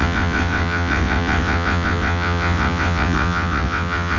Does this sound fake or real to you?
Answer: fake